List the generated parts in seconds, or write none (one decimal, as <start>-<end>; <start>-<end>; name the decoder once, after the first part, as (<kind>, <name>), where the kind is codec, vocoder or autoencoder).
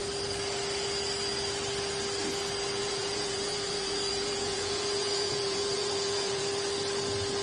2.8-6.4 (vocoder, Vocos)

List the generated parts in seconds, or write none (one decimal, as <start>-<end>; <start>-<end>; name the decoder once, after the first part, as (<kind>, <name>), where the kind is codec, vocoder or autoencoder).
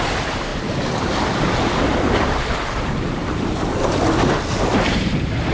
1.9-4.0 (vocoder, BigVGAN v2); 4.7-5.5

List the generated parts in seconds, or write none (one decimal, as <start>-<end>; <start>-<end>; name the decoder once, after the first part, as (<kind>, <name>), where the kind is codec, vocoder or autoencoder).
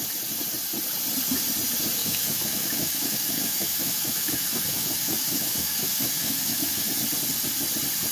2.0-6.9 (autoencoder, DAC-VAE)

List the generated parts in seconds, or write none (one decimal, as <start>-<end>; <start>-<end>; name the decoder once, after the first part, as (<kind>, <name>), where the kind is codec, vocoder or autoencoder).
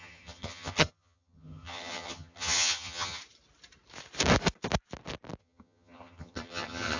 0.0-3.2 (vocoder, HiFi-GAN); 5.4-7.0